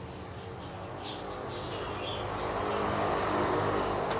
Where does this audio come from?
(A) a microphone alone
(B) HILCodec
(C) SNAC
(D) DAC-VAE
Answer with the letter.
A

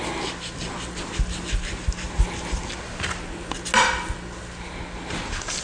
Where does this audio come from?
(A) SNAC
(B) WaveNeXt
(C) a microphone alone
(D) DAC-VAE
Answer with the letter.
C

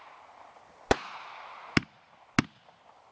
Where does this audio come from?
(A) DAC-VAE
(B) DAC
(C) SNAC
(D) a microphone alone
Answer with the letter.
D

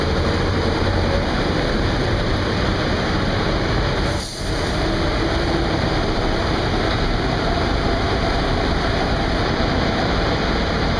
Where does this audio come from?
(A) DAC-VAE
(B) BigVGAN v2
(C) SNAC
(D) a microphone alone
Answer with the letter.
B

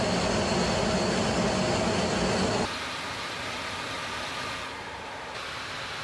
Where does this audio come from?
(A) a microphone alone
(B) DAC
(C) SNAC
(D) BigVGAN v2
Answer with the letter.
A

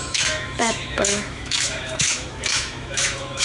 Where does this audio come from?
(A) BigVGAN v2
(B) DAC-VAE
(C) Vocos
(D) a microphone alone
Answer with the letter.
B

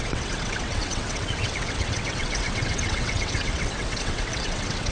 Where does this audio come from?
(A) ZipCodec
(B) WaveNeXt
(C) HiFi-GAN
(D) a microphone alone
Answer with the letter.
B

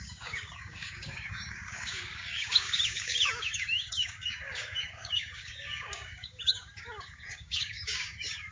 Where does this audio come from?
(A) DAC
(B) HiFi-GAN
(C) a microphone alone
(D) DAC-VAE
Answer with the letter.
A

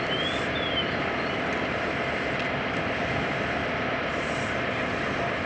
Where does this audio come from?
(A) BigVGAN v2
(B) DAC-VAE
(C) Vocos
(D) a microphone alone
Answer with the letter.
D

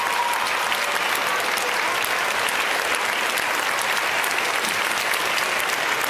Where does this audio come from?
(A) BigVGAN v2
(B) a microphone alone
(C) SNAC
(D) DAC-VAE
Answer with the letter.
B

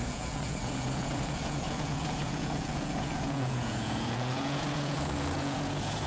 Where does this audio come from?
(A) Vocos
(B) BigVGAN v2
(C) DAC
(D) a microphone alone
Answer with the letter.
A